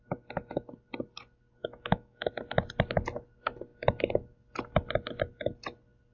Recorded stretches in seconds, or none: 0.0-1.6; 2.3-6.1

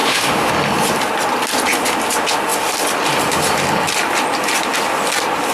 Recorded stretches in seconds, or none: 0.5-5.5